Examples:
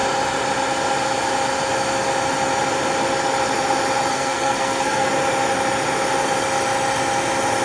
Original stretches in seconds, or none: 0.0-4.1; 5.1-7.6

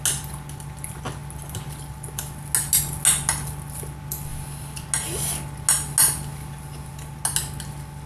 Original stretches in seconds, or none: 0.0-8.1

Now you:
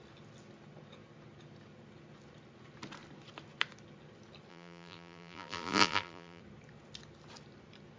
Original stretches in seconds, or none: 0.0-4.5; 6.4-8.0

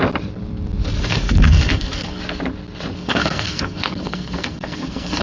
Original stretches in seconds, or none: 0.0-1.1; 2.2-3.0

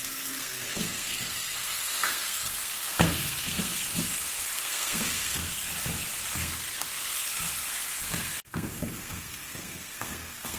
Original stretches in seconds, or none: 5.7-6.3

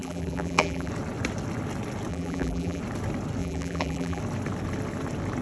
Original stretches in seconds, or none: 0.9-2.1; 2.8-3.4; 4.2-5.4

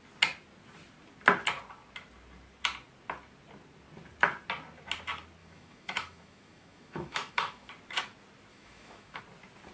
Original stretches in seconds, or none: 0.0-5.4; 7.7-8.5; 9.2-9.7